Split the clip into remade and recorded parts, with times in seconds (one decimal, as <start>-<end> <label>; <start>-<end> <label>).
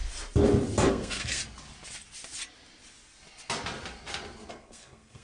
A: 0.0-0.9 recorded; 0.9-1.4 remade; 1.4-4.5 recorded; 4.5-5.2 remade